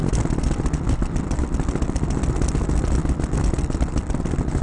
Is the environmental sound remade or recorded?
recorded